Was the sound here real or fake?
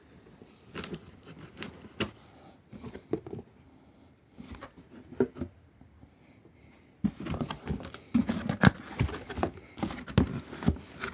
real